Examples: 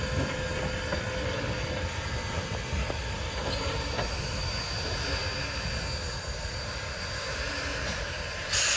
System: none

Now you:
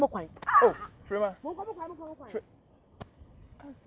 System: none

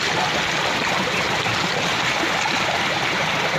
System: none